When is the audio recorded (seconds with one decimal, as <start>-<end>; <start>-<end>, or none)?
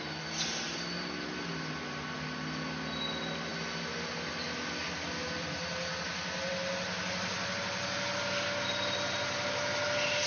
0.0-10.3